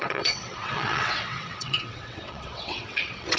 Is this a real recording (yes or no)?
no